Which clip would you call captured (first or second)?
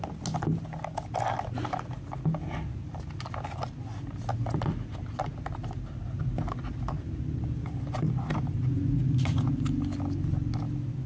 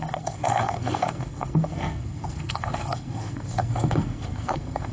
first